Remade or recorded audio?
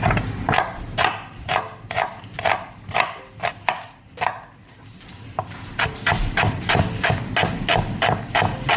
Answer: recorded